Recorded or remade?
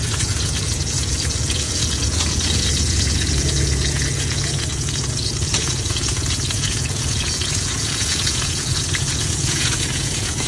remade